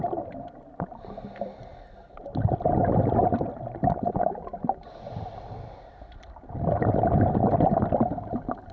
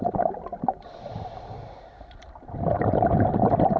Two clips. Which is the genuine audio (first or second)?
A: first